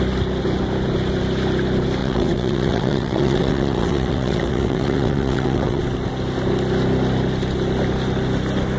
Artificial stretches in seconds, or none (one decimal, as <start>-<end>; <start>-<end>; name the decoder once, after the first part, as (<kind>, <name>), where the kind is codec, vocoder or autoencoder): 2.0-5.8 (vocoder, WaveNeXt)